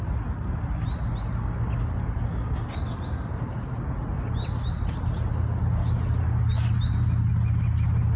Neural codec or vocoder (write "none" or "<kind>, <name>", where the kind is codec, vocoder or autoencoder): none